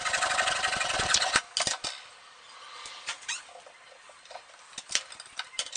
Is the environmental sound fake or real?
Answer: real